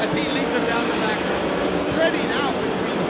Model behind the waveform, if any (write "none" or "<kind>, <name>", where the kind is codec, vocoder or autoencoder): none